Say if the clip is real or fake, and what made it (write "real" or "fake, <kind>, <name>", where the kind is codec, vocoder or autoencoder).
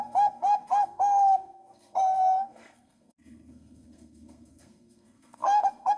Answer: fake, codec, SNAC